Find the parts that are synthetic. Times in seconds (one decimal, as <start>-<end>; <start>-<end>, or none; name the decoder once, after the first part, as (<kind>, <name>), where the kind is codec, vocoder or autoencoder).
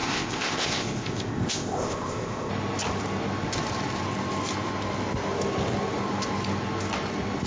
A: 0.0-2.5 (codec, ZipCodec)